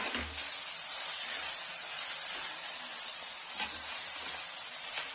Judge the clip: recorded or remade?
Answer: recorded